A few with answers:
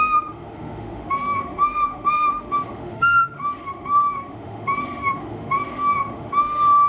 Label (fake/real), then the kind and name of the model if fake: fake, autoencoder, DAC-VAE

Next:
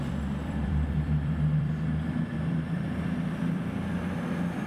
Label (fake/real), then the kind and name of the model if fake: fake, vocoder, BigVGAN v2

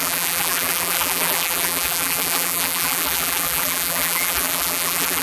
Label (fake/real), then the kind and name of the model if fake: fake, vocoder, BigVGAN v2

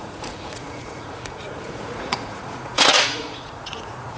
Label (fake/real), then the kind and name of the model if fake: fake, vocoder, Vocos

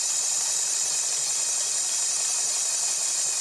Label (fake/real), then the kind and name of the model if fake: real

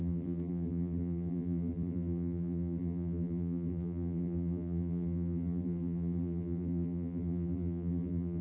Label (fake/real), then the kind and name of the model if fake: fake, vocoder, BigVGAN v2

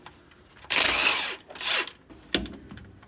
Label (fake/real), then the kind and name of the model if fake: real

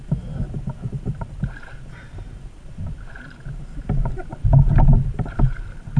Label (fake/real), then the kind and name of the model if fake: real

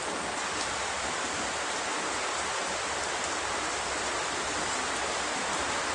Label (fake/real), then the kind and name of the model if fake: real